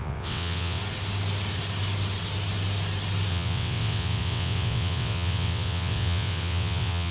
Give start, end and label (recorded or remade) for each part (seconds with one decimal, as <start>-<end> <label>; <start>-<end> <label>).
0.0-0.8 remade; 0.8-3.3 recorded; 3.3-7.1 remade